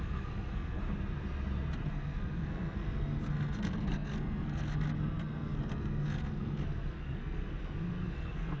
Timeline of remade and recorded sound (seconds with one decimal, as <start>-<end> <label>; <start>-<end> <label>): 0.0-0.8 remade; 0.8-1.9 recorded; 1.9-8.6 remade